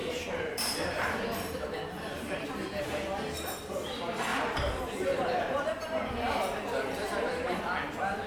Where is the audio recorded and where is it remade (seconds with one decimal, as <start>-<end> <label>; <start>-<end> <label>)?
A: 0.0-2.8 remade; 2.8-4.3 recorded; 4.3-7.6 remade; 7.6-8.3 recorded